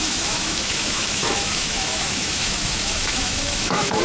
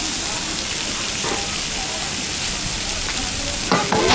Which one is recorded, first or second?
second